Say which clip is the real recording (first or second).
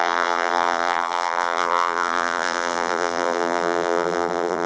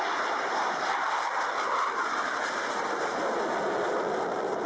second